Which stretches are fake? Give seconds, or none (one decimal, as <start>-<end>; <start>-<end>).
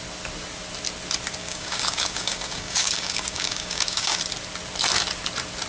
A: 1.4-4.2